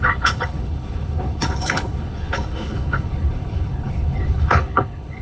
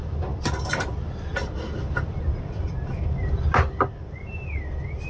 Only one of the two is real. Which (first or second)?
second